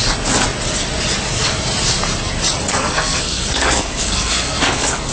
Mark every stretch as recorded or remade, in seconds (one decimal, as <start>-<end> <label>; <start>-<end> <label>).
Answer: 0.0-2.7 recorded; 2.7-5.1 remade